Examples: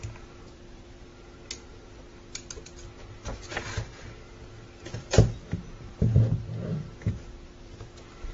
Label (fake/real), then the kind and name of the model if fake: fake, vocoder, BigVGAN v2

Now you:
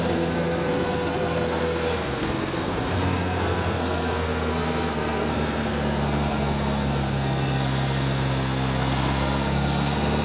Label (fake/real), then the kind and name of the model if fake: fake, codec, SNAC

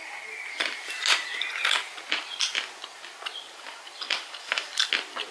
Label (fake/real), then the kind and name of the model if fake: real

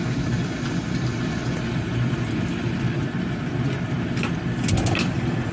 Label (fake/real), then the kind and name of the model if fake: real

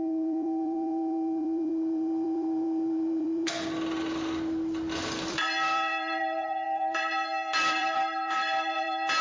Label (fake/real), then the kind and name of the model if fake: fake, vocoder, BigVGAN v2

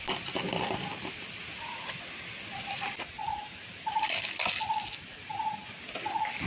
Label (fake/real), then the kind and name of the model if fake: real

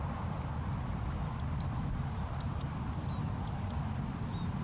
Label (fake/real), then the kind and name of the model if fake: real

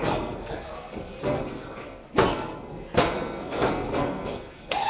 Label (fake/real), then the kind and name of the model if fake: fake, codec, SNAC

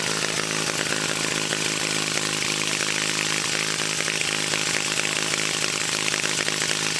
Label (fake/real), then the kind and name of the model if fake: real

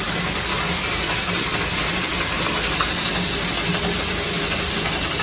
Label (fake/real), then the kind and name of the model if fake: real